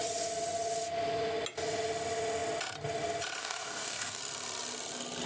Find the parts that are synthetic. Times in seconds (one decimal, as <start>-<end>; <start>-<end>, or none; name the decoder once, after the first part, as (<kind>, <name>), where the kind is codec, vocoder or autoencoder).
3.4-4.2 (codec, DAC)